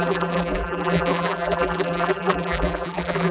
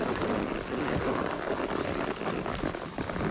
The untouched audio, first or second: second